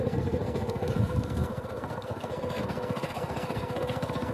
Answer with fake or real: fake